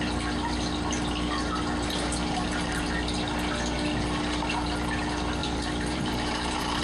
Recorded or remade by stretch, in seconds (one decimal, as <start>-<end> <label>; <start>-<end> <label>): 0.0-5.4 recorded; 5.4-6.8 remade